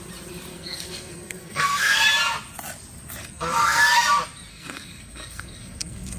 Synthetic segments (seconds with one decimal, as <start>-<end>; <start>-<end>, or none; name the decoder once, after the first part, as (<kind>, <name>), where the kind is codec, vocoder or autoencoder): 0.5-2.0 (codec, SNAC); 3.2-3.8; 4.5-6.2